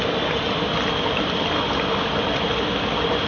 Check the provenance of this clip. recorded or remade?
recorded